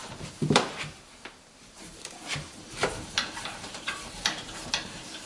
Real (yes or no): no